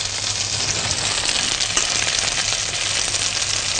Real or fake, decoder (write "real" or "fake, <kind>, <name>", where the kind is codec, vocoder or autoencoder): real